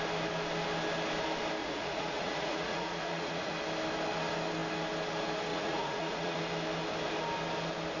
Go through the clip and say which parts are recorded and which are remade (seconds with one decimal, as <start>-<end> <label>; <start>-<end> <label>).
0.0-1.6 recorded; 1.6-3.5 remade; 3.5-5.5 recorded; 5.5-6.4 remade; 6.4-8.0 recorded